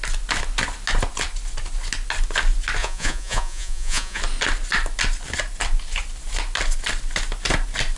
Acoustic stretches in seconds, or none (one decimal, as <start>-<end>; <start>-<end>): 0.0-2.8; 4.2-8.0